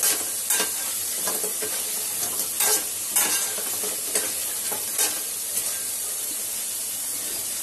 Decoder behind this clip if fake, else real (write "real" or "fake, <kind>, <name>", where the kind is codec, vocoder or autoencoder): real